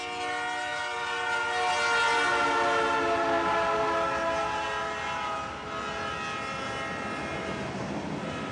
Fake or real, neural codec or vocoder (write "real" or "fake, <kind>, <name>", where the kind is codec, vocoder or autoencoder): real